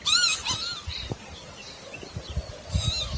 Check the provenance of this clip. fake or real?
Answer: real